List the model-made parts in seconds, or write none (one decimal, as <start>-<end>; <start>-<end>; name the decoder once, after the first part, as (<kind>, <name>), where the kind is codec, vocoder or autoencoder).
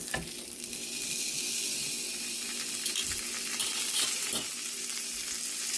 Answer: none